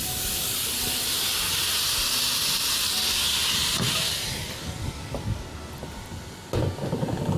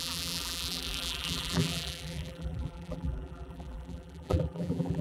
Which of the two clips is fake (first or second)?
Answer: second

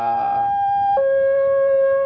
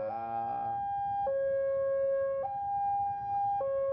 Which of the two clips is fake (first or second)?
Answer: first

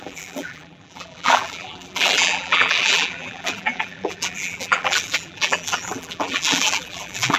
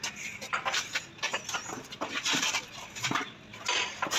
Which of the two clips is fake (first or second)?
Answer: first